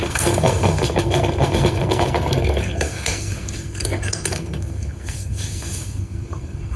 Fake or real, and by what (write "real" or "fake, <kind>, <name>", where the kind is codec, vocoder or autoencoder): fake, codec, SNAC